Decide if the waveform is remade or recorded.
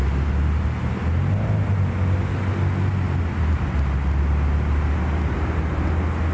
recorded